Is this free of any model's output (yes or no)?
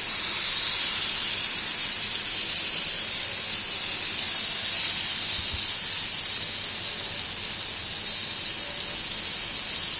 yes